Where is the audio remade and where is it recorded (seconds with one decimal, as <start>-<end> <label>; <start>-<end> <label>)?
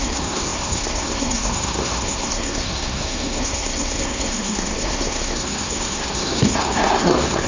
0.0-7.5 remade